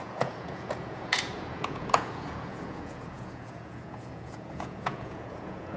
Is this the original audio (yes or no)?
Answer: no